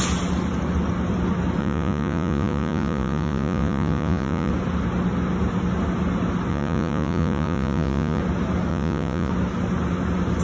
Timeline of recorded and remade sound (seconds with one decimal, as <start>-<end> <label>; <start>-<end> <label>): 0.0-1.6 recorded; 1.6-4.5 remade; 4.5-6.5 recorded; 6.5-8.2 remade; 8.2-8.7 recorded; 8.7-9.3 remade; 9.3-10.4 recorded